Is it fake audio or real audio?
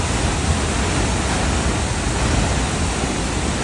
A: real